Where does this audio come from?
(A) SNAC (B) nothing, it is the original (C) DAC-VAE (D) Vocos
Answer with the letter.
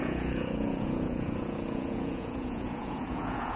D